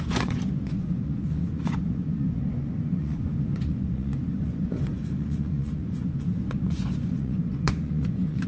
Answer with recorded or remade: remade